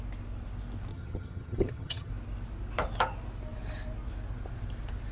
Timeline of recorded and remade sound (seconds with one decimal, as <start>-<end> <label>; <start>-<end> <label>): 0.0-0.9 recorded; 0.9-2.1 remade; 2.1-5.1 recorded